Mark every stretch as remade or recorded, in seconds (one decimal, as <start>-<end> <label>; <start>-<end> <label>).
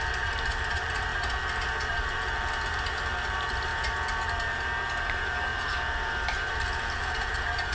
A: 0.0-1.1 remade; 1.1-1.9 recorded; 1.9-3.7 remade; 3.7-5.0 recorded; 5.0-7.7 remade